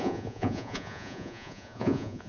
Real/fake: fake